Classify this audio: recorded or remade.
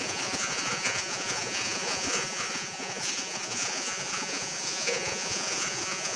remade